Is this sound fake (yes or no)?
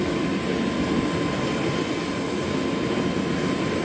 no